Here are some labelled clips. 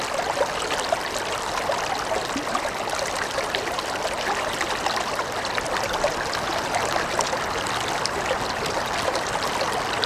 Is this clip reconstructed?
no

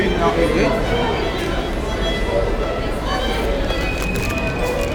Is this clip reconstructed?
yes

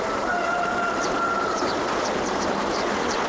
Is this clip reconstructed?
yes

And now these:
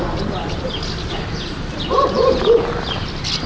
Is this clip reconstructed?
yes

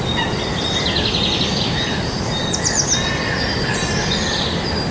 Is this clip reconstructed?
no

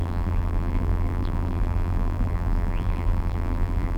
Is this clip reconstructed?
yes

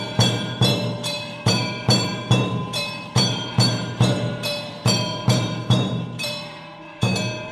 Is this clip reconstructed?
yes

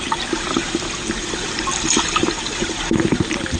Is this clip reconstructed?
yes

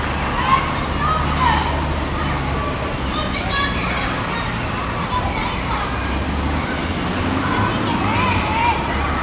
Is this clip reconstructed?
no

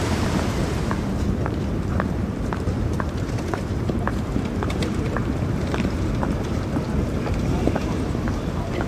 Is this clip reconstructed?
yes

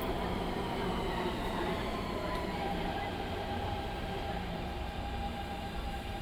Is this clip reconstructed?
yes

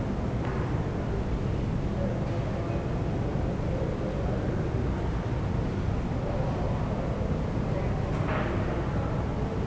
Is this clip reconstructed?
no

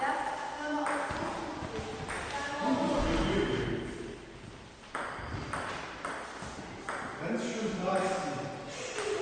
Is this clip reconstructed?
no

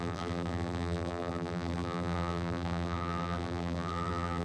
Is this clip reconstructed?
yes